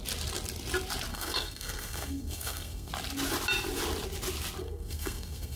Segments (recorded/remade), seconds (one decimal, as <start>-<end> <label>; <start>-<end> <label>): 0.0-1.1 recorded; 1.1-2.9 remade; 2.9-4.6 recorded; 4.6-5.6 remade